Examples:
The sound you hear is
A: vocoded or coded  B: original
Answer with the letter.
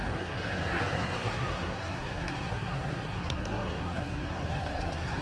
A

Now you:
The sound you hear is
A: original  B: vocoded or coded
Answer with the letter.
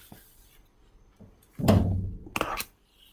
A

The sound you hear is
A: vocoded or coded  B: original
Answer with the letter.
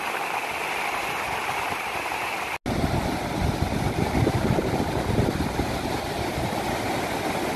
B